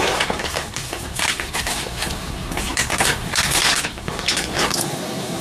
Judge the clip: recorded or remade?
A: remade